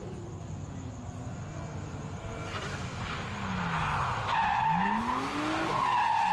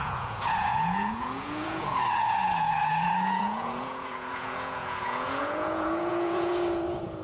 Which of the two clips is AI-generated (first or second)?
second